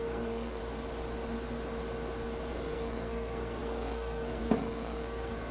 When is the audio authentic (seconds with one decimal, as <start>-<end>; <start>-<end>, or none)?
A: 0.6-2.5